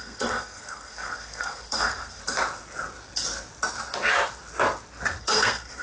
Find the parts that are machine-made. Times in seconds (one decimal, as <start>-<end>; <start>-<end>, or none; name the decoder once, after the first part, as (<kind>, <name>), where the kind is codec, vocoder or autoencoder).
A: 0.0-2.2 (codec, SNAC); 5.2-5.8